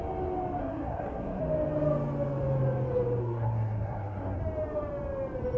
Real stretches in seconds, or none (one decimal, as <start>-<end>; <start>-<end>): 0.0-0.6; 1.4-3.2; 4.4-5.6